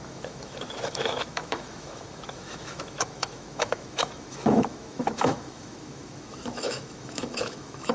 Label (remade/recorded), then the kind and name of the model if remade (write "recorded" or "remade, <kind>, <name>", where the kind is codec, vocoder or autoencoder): remade, autoencoder, DAC-VAE